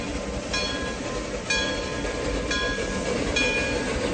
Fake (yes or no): no